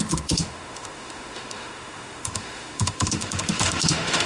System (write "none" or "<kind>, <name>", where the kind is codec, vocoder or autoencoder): autoencoder, DAC-VAE